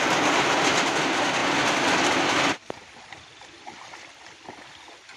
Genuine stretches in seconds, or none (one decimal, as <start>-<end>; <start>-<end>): 0.0-1.4; 4.5-5.2

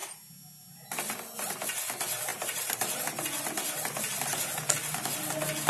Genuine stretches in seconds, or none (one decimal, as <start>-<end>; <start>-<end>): 0.0-2.3; 2.9-5.7

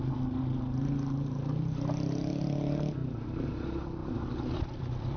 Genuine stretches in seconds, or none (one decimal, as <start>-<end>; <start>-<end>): 0.0-3.0; 3.5-4.0

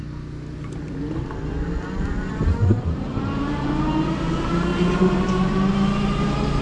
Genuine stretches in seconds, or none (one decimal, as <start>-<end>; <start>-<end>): 0.0-2.6; 3.7-4.7; 5.7-6.6

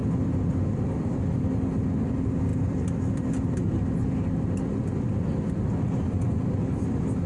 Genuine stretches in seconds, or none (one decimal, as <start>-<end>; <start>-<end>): 1.4-2.5; 3.8-7.3

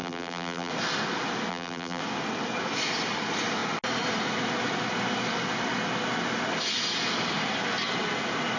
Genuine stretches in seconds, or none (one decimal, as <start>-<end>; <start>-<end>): 0.7-1.5; 2.0-8.6

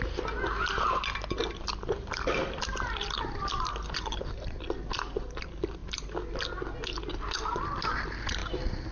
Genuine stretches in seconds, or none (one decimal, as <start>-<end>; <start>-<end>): 0.0-8.4